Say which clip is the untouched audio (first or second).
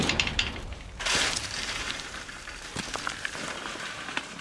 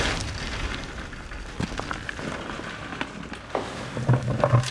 second